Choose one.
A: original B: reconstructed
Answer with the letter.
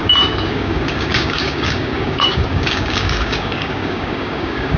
B